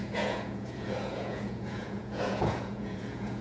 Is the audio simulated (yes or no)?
yes